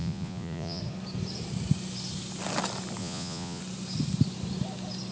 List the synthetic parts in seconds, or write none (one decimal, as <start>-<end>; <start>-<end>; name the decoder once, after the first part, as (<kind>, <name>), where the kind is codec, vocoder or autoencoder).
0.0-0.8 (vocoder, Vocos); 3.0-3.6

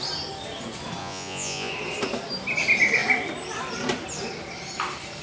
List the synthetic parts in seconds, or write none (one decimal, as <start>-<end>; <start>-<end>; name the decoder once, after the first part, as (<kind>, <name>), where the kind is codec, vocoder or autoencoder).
1.0-1.7 (vocoder, Vocos)

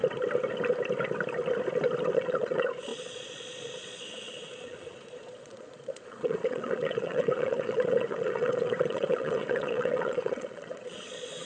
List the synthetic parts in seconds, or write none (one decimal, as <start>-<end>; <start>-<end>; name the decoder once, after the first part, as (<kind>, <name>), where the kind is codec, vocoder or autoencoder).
2.1-11.4 (vocoder, Vocos)

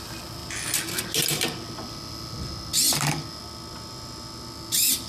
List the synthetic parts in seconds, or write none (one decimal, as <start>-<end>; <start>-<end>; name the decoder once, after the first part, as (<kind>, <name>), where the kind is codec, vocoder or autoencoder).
none

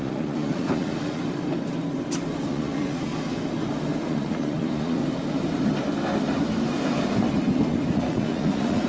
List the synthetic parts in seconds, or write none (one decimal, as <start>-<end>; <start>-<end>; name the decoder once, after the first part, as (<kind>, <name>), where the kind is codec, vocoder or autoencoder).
0.0-1.2 (vocoder, Vocos); 2.5-3.1; 4.0-5.0; 7.9-8.9

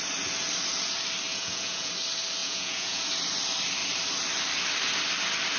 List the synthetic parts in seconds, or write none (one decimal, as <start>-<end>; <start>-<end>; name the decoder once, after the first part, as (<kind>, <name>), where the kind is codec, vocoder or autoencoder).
1.3-1.9 (vocoder, Vocos); 2.4-3.0